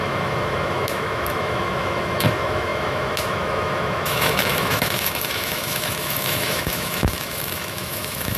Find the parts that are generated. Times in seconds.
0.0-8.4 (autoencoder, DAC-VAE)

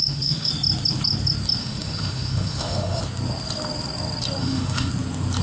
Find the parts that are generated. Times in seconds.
0.0-0.5 (autoencoder, DAC-VAE); 1.6-3.0; 4.4-4.9

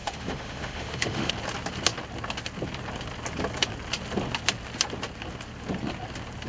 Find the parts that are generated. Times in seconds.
0.0-1.3 (autoencoder, DAC-VAE)

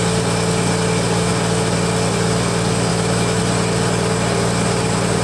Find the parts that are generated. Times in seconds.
2.9-3.4 (autoencoder, DAC-VAE)